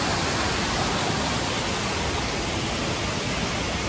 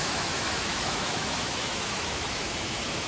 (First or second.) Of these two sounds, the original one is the first